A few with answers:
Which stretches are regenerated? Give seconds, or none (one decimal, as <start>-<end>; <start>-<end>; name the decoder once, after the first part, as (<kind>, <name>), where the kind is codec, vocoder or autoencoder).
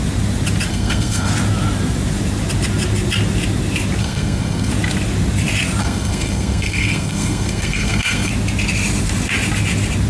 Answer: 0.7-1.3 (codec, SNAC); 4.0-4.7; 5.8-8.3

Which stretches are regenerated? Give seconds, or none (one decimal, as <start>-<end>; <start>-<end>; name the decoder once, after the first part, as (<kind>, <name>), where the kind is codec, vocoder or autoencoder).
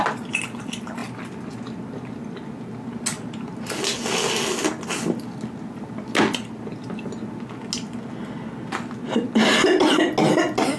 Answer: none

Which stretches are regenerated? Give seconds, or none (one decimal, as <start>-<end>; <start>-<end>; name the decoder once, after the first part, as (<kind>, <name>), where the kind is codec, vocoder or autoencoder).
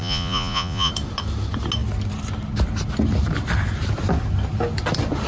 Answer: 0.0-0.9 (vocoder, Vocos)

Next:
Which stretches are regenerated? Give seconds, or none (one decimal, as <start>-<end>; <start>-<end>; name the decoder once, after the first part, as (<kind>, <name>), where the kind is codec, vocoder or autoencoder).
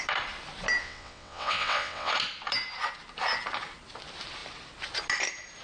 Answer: 0.8-2.1 (vocoder, WaveNeXt)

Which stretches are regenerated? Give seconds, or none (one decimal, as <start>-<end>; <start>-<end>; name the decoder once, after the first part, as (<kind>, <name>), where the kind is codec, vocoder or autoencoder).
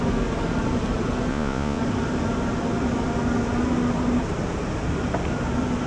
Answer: 1.3-1.8 (vocoder, Vocos)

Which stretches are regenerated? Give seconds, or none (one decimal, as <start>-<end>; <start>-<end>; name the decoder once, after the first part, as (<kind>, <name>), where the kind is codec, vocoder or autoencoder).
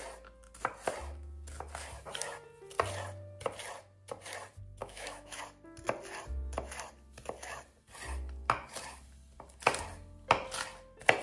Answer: 4.8-5.4 (autoencoder, DAC-VAE)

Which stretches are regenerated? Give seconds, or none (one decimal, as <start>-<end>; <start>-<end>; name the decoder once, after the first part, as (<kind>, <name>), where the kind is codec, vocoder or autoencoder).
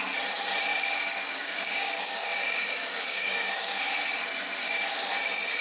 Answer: 0.7-4.0 (codec, DAC); 4.6-5.1